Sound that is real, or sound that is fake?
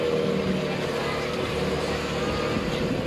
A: real